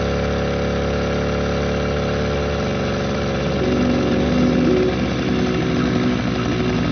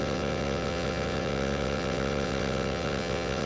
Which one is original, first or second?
first